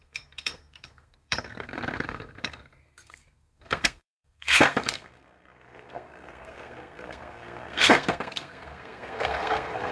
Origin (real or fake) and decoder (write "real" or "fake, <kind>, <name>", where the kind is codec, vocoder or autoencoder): fake, codec, SNAC